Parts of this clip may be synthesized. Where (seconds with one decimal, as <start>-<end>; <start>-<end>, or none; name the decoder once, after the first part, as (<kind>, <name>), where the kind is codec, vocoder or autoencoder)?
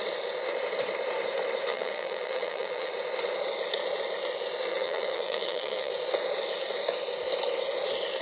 1.7-2.9 (vocoder, WaveNeXt); 4.7-5.9